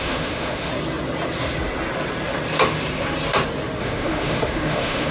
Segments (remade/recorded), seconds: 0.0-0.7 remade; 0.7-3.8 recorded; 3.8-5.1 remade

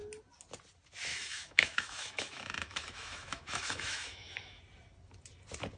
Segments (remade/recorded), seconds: 0.0-1.1 recorded; 1.1-4.6 remade; 4.6-5.8 recorded

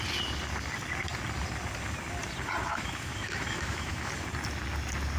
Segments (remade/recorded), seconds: 0.0-2.7 recorded; 2.7-4.1 remade; 4.1-5.2 recorded

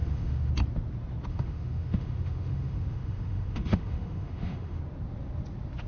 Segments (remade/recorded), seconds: 0.0-0.5 remade; 0.5-1.3 recorded; 1.3-4.8 remade; 4.8-5.9 recorded

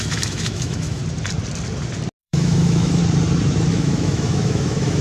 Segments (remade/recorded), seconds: 0.0-1.0 remade; 1.0-2.2 recorded; 2.2-3.0 remade; 3.0-3.7 recorded; 3.7-5.0 remade

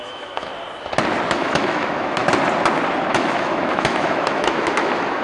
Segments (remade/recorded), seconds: 0.0-0.5 remade; 0.5-1.3 recorded; 1.3-2.2 remade; 2.2-3.1 recorded; 3.1-5.2 remade

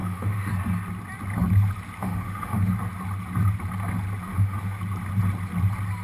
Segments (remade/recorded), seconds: 0.0-0.5 remade; 0.5-2.0 recorded; 2.0-2.7 remade; 2.7-4.3 recorded; 4.3-4.8 remade; 4.8-6.0 recorded